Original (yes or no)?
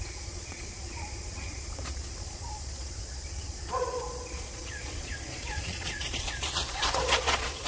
no